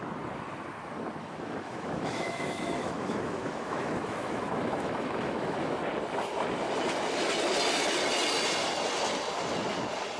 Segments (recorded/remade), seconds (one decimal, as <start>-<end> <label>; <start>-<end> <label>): 0.0-1.2 recorded; 1.2-5.8 remade; 5.8-10.2 recorded